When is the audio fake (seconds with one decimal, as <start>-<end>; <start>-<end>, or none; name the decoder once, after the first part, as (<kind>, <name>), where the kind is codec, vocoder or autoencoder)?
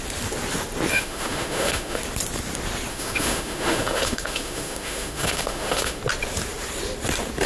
0.9-2.0 (autoencoder, DAC-VAE); 2.9-6.0